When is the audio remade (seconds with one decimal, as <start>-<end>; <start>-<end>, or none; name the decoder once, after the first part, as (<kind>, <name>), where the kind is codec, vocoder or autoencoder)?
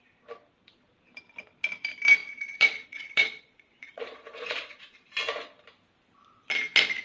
2.2-5.1 (vocoder, Vocos)